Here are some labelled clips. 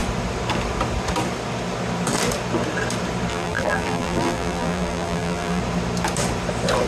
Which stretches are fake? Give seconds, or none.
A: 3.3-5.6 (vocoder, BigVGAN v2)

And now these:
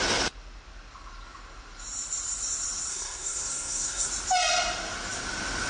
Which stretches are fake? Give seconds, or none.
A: 2.9-4.1 (codec, SNAC)

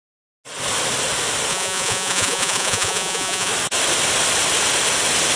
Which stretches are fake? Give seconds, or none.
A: 1.5-3.5 (vocoder, Vocos)

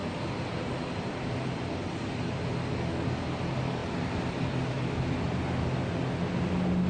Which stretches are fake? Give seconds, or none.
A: none

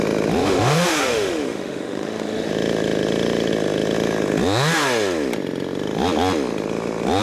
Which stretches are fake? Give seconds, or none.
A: 0.4-2.5 (autoencoder, DAC-VAE)

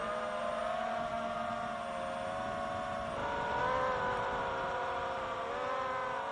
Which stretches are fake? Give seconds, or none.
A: 3.2-5.5 (vocoder, BigVGAN v2)

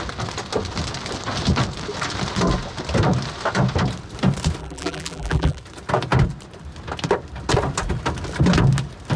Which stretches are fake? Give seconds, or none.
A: 4.6-5.6 (vocoder, BigVGAN v2)